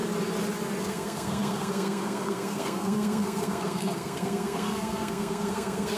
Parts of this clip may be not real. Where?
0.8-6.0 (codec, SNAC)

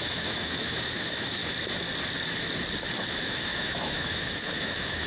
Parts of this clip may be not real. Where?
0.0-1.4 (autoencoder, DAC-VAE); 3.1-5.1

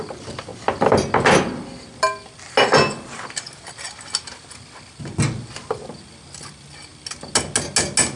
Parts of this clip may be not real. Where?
none

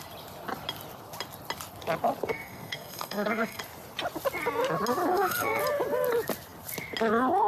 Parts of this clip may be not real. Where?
2.3-3.6 (codec, SNAC); 5.1-5.6